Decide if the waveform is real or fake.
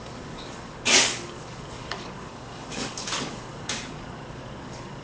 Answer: fake